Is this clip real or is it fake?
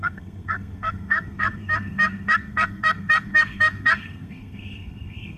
fake